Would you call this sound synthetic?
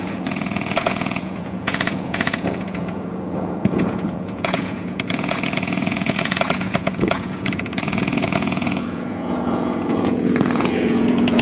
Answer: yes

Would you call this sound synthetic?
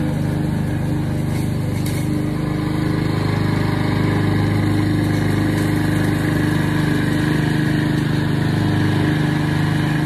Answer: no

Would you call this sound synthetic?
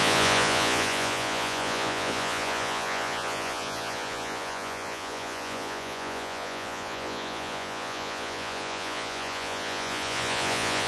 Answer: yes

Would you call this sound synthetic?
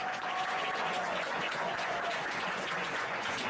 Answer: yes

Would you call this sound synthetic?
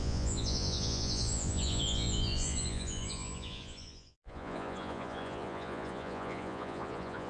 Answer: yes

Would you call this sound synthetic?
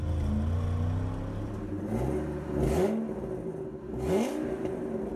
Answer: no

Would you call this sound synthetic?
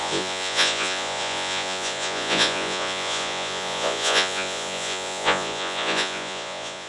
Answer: yes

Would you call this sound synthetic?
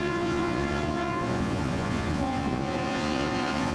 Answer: yes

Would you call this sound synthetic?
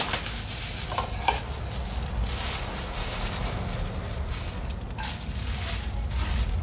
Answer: no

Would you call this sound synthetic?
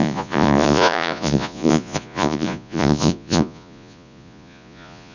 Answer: yes